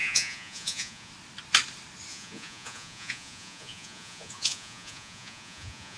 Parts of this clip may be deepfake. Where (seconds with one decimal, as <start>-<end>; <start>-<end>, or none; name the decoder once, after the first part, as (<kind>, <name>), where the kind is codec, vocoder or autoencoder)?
0.0-1.1 (vocoder, Vocos); 2.1-6.0